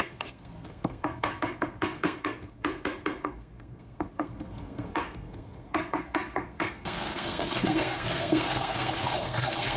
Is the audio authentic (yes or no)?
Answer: no